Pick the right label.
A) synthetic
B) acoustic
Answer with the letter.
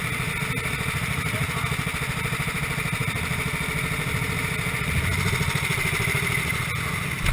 B